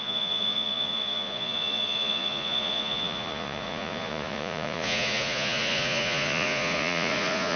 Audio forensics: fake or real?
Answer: fake